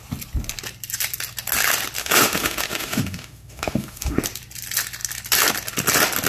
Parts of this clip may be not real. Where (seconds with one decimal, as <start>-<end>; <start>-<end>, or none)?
2.0-4.2